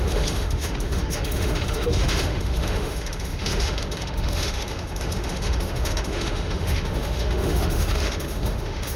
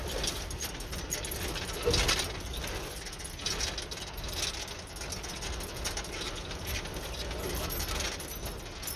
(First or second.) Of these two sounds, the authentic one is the second